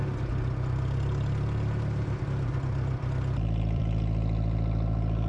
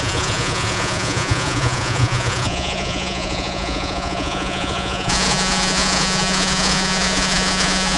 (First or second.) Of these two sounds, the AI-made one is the second